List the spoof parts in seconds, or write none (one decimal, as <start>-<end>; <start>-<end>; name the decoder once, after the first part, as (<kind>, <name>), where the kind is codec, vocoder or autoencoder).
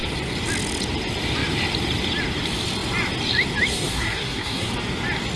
3.7-4.7 (codec, SNAC)